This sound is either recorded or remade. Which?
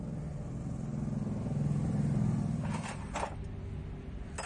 recorded